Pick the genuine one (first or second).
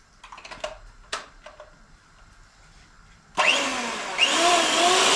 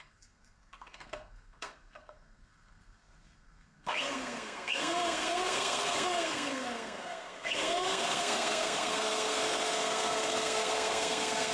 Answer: first